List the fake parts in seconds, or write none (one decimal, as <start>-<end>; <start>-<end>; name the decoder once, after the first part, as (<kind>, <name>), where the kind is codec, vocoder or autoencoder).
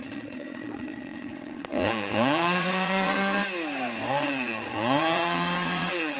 0.0-3.4 (vocoder, Vocos); 4.1-6.2